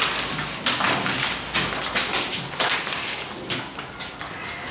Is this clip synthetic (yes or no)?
no